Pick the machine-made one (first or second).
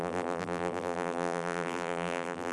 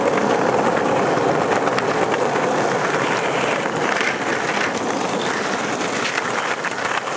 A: first